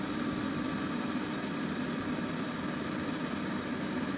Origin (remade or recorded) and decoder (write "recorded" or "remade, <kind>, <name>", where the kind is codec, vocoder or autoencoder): recorded